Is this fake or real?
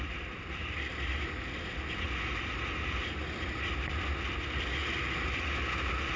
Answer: real